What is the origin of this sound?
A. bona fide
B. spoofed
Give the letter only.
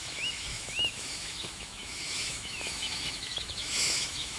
B